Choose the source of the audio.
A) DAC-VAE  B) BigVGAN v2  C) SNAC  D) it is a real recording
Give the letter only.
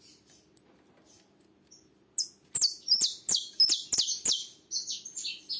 D